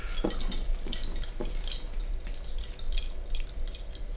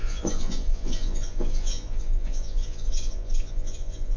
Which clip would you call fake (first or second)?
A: second